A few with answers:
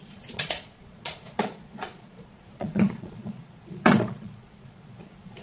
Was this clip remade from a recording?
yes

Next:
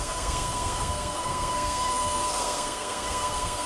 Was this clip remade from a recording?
yes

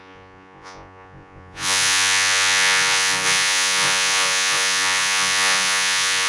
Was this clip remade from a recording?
yes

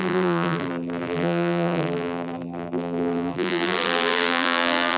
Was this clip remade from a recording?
yes